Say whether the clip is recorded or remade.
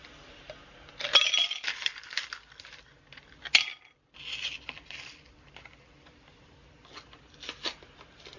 recorded